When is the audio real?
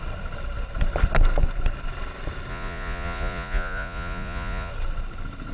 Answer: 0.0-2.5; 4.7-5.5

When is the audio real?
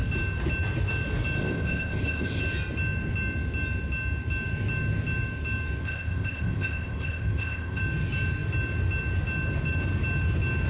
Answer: 0.0-1.4; 2.4-5.8; 7.8-10.7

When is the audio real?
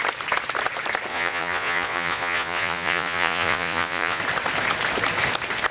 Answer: 0.0-1.1; 4.2-5.7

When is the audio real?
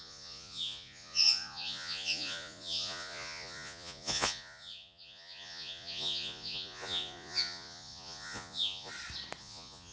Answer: 8.9-9.4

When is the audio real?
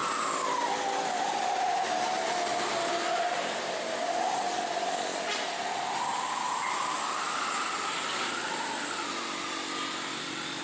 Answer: 0.0-10.6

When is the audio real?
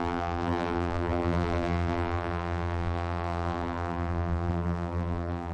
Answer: none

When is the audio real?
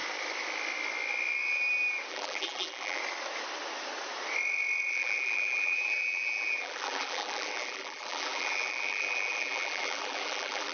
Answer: 0.0-2.1; 3.0-4.9